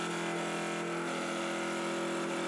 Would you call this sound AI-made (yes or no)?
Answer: no